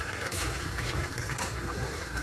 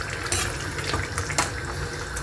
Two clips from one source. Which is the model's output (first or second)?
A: first